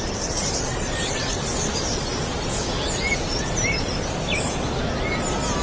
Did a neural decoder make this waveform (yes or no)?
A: no